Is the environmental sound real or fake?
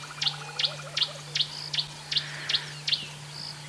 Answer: real